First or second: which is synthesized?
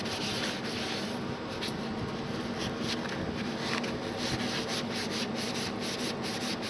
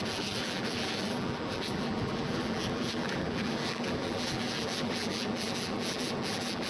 second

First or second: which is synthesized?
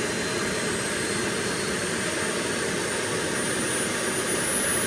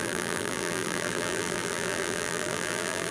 second